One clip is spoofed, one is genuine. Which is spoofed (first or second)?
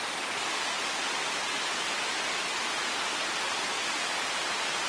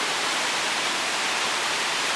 second